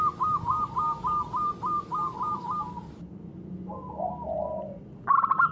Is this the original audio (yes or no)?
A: yes